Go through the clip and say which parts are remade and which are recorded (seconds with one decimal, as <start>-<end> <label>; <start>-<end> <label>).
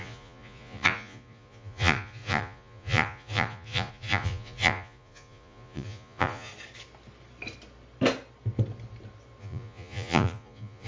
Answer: 0.0-6.5 remade; 6.5-9.4 recorded; 9.4-10.9 remade